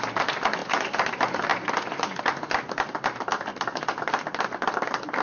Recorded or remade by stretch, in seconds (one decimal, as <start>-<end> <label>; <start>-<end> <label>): 0.0-5.2 recorded